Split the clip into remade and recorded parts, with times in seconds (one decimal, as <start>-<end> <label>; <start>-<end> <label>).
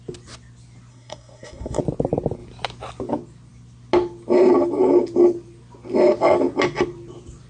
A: 0.0-0.9 recorded; 0.9-1.8 remade; 1.8-7.5 recorded